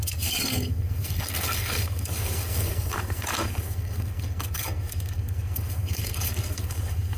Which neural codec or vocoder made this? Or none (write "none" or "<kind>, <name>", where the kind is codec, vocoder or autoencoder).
codec, SNAC